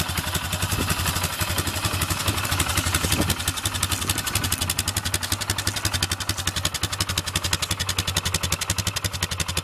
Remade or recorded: recorded